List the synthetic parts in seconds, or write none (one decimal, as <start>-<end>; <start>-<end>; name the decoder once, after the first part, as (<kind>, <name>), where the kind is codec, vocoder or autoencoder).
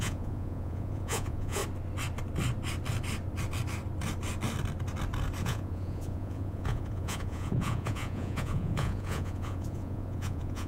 0.0-1.6 (vocoder, Vocos); 5.4-10.7